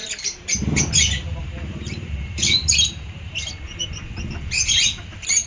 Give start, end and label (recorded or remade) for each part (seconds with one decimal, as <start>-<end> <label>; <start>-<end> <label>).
0.0-3.3 remade; 3.3-5.5 recorded